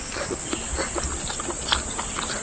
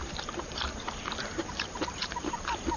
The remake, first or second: second